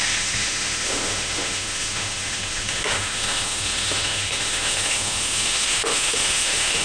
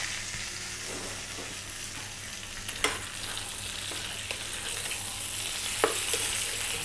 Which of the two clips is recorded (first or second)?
second